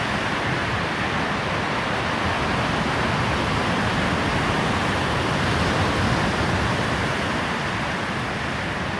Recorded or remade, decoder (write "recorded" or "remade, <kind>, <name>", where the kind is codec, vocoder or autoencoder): recorded